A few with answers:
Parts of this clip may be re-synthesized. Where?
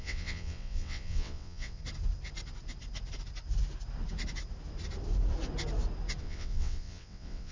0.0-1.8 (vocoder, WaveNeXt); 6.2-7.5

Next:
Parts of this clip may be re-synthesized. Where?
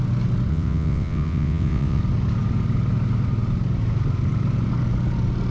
0.5-2.0 (vocoder, WaveNeXt)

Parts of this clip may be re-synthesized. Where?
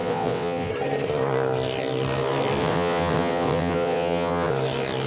0.0-0.7 (vocoder, WaveNeXt); 2.6-4.5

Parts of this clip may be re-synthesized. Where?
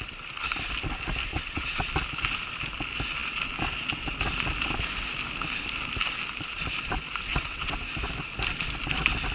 1.3-1.9 (vocoder, WaveNeXt); 7.3-7.9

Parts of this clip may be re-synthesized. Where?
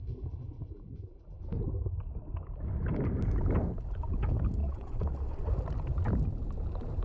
4.6-5.5 (vocoder, WaveNeXt)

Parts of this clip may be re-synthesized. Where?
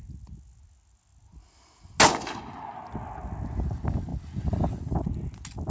none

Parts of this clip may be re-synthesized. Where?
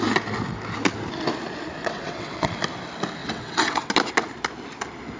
1.8-2.6 (vocoder, WaveNeXt); 3.2-3.9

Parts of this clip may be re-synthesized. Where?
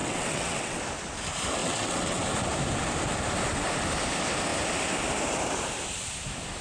0.0-0.8 (vocoder, WaveNeXt); 1.6-2.2